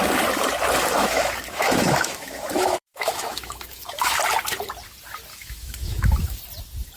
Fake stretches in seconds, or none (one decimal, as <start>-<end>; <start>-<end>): 1.0-4.2; 5.3-6.4

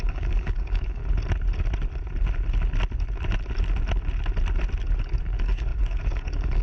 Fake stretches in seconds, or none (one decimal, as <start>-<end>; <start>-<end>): 0.0-1.0; 5.0-6.6